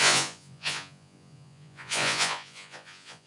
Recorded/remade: remade